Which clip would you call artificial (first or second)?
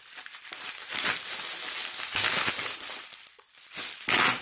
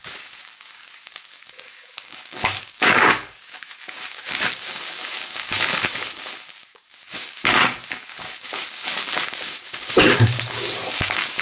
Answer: second